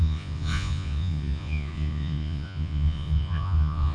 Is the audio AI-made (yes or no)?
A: yes